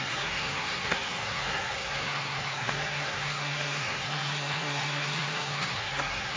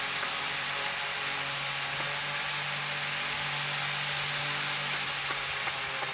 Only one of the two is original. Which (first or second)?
second